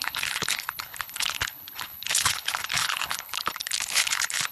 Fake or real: fake